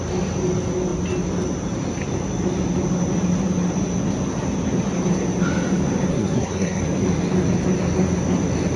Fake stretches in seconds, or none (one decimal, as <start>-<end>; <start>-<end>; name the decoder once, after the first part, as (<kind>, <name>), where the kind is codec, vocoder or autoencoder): 6.1-6.8 (codec, SNAC)